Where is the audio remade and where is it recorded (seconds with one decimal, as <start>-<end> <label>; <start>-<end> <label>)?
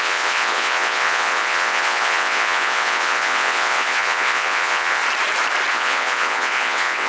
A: 0.0-5.0 remade; 5.0-5.7 recorded; 5.7-7.1 remade